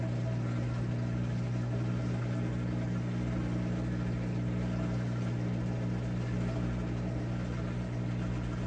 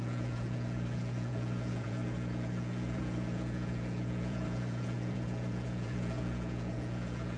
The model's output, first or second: second